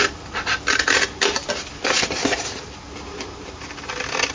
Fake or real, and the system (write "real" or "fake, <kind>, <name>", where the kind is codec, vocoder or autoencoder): real